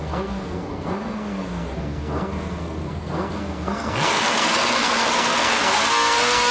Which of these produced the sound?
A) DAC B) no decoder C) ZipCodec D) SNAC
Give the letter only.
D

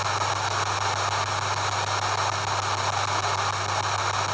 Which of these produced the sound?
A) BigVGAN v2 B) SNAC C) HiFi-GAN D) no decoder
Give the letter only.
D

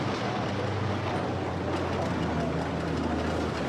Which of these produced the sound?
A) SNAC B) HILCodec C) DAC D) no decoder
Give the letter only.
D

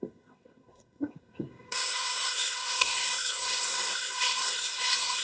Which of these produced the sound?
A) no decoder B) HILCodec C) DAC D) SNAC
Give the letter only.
D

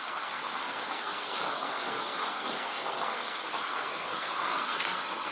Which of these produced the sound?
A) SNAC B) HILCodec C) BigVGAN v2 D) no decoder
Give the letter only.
A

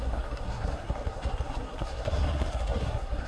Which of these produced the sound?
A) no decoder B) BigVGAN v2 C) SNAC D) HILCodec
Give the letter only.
C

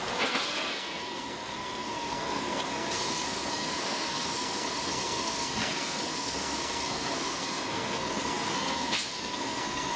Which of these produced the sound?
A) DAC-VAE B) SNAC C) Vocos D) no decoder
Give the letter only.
B